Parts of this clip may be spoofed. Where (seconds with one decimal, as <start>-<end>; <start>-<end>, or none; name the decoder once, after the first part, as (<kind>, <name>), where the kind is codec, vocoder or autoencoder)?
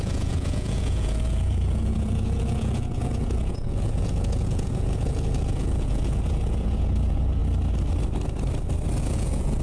0.0-7.4 (vocoder, Vocos); 9.0-9.6